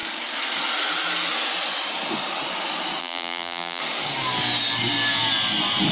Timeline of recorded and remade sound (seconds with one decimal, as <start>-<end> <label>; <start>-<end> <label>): 0.0-3.0 recorded; 3.0-3.8 remade; 3.8-5.9 recorded